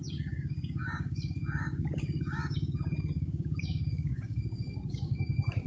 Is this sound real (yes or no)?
no